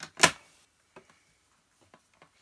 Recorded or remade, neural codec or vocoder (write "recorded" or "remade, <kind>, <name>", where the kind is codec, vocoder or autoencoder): recorded